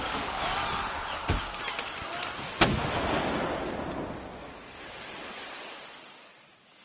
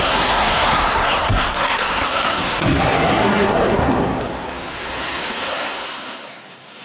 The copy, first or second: second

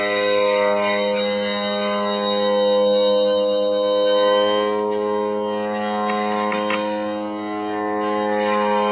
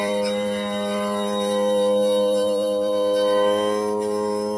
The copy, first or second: second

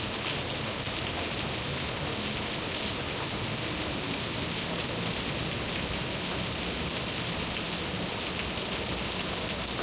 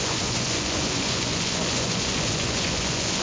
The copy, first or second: second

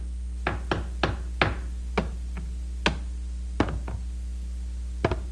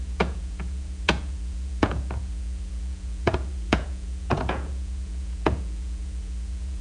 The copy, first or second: second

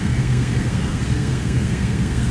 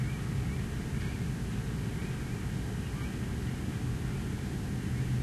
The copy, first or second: first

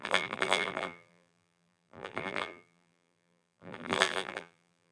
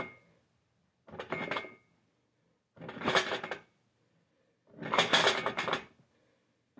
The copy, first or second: first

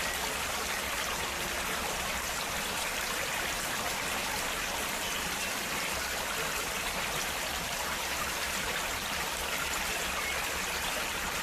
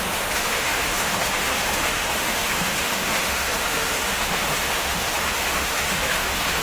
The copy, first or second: second